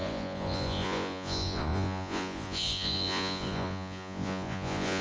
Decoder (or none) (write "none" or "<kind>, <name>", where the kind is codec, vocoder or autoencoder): vocoder, Vocos